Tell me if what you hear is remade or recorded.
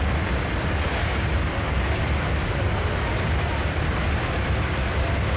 recorded